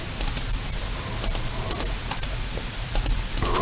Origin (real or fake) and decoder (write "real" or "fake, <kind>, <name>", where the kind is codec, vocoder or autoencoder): real